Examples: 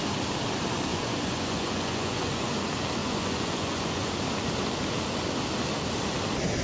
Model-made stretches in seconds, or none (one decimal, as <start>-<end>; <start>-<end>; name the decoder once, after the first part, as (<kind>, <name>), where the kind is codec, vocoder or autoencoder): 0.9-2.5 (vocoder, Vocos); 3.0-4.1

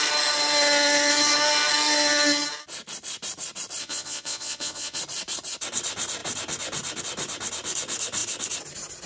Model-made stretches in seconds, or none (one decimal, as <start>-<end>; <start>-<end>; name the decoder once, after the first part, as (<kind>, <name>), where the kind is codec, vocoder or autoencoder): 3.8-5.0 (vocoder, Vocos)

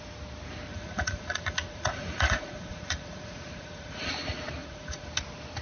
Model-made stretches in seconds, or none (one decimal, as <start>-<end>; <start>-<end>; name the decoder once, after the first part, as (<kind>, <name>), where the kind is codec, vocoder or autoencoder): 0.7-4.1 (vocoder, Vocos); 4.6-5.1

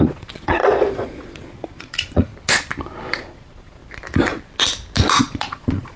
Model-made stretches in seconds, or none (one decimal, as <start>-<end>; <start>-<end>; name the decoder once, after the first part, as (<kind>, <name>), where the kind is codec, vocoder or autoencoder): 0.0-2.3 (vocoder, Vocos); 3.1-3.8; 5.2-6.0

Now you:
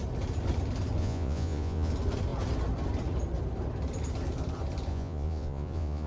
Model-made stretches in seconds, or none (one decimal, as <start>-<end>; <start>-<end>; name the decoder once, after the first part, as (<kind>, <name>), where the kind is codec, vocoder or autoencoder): 1.0-1.9 (vocoder, Vocos); 4.9-6.1

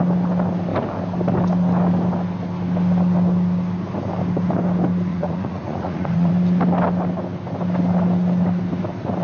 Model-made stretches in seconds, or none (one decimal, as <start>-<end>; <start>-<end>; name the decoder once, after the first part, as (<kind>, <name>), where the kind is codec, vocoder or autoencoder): 5.1-6.3 (vocoder, Vocos)